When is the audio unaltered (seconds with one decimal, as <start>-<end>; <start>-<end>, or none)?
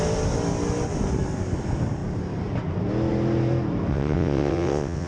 0.0-3.9